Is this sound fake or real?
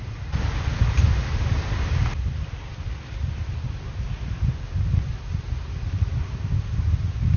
real